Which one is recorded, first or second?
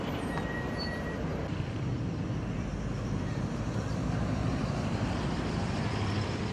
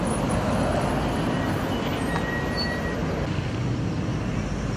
second